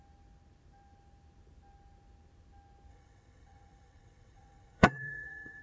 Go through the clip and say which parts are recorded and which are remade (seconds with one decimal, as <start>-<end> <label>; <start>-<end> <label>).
0.0-2.9 recorded; 2.9-5.6 remade